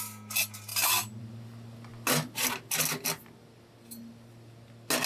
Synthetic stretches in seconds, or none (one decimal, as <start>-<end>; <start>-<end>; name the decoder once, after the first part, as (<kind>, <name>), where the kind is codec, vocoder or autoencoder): none